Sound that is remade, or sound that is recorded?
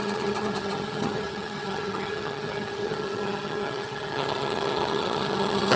remade